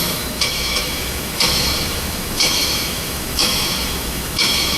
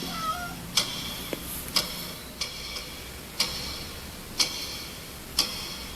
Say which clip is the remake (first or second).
first